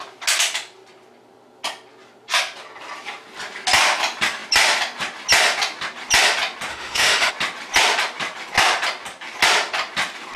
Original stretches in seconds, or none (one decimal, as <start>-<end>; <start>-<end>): 0.0-6.7; 7.3-10.4